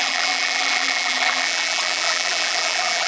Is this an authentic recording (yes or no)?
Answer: no